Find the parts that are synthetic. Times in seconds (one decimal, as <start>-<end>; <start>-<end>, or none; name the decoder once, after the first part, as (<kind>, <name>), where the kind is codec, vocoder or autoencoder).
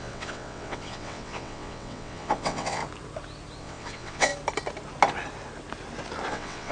0.0-2.8 (vocoder, WaveNeXt); 3.6-4.3; 6.3-6.7